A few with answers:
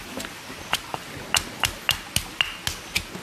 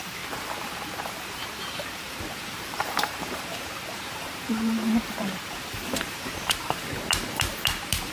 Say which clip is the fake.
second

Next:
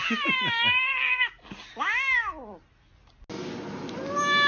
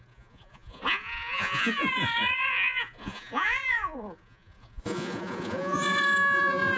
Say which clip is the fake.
second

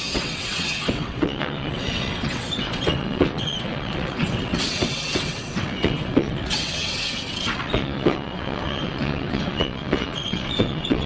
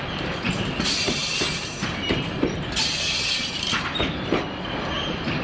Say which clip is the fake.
first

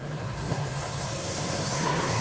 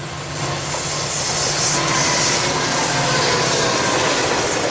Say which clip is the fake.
first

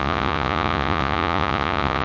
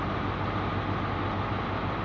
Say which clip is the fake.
first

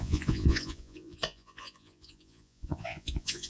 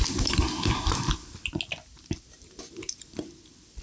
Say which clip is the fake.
first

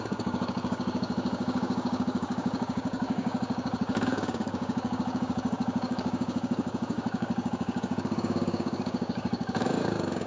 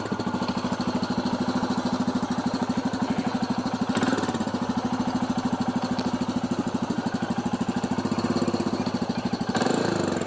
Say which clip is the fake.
first